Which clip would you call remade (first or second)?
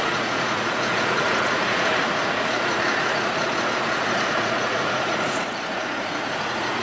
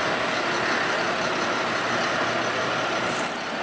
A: first